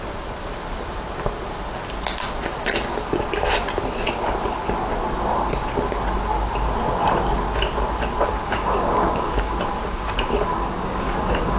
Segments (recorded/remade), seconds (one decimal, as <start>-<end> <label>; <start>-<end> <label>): 0.0-8.4 recorded; 8.4-9.5 remade; 9.5-10.5 recorded; 10.5-11.6 remade